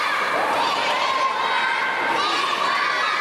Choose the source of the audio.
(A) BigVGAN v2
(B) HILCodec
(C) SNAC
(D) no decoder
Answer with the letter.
A